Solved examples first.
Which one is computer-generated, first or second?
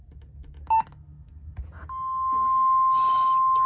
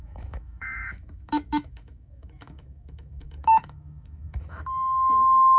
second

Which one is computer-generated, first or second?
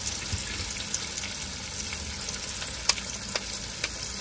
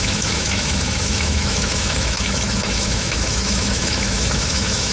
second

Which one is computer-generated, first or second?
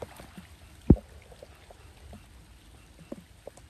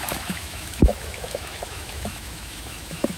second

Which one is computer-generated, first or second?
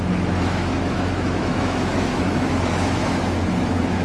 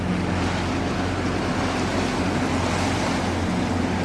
first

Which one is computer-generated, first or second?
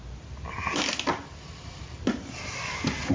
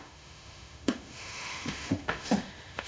second